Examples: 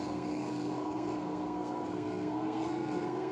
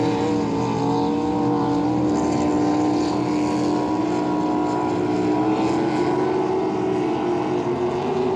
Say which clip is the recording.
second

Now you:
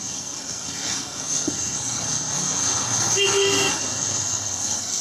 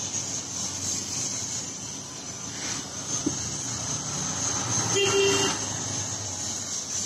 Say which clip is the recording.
second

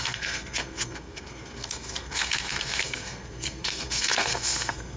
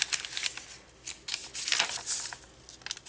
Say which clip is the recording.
second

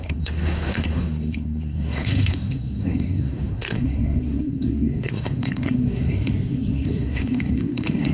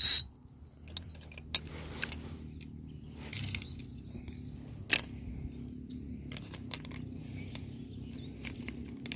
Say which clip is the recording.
second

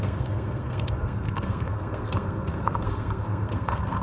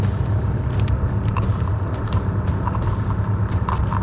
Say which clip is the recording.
second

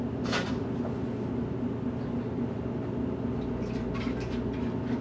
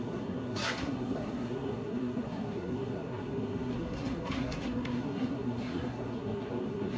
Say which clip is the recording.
first